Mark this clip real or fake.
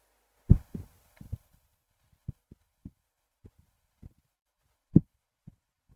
real